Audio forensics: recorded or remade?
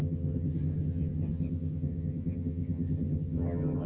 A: remade